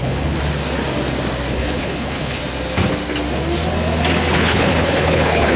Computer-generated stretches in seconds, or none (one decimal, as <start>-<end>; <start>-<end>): 0.0-0.4; 1.5-2.4; 4.3-5.6